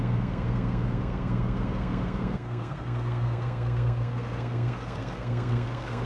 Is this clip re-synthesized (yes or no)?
yes